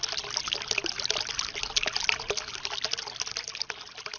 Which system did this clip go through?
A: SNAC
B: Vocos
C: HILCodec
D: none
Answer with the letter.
D